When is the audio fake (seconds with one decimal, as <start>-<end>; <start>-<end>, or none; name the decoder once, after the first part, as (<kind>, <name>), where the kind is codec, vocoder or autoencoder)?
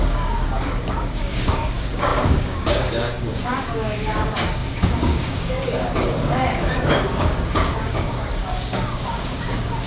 0.0-9.9 (codec, DAC)